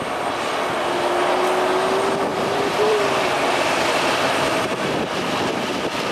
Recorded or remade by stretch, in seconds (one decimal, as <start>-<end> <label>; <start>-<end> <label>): 0.0-2.3 recorded; 2.3-6.1 remade

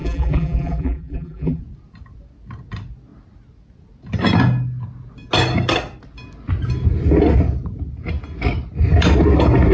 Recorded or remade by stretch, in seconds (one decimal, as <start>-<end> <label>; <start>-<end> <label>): 0.0-1.6 remade; 1.6-9.7 recorded

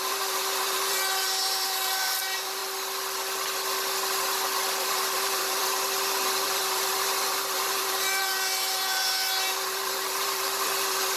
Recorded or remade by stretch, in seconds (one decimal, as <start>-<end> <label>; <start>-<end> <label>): 0.0-2.6 remade; 2.6-4.8 recorded; 4.8-11.2 remade

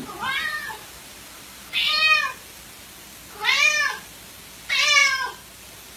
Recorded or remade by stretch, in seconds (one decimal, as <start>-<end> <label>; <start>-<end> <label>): 0.0-5.0 recorded; 5.0-5.6 remade; 5.6-6.0 recorded

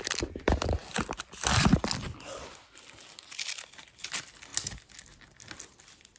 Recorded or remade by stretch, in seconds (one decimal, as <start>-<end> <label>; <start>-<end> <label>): 0.0-6.2 recorded

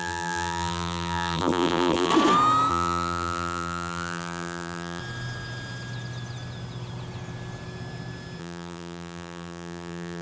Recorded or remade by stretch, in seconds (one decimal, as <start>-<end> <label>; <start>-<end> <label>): 0.0-2.1 remade; 2.1-2.7 recorded; 2.7-5.0 remade; 5.0-8.4 recorded; 8.4-10.2 remade